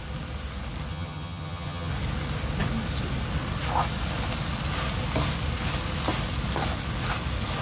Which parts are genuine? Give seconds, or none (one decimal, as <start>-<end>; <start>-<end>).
0.0-0.9; 1.9-7.6